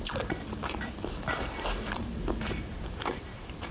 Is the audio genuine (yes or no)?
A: no